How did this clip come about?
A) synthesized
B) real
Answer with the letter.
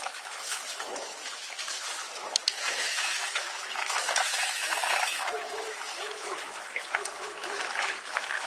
A